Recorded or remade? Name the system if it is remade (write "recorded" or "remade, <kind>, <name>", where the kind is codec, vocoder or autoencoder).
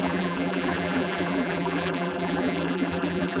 remade, vocoder, BigVGAN v2